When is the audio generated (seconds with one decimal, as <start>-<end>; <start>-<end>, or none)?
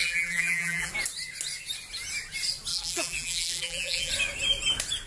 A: 0.0-0.9; 2.7-4.1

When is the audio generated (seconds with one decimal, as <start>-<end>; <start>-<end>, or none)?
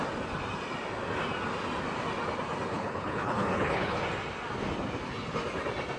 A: 2.7-4.0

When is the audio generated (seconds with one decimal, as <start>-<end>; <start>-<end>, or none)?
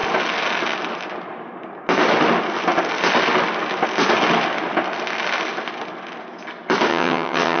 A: 6.9-7.6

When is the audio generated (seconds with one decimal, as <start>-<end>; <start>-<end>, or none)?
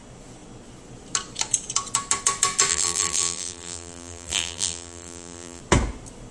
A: 2.7-5.6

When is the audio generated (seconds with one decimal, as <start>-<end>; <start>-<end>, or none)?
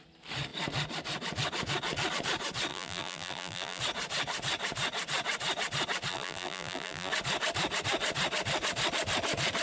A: 2.7-3.8; 6.1-7.1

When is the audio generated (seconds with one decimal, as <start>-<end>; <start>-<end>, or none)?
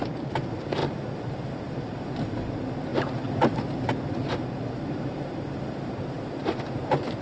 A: 0.8-2.5; 2.9-3.6; 4.1-7.2